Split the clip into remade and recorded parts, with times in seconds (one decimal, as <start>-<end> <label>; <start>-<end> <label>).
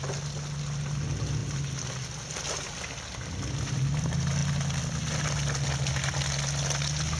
0.0-7.2 recorded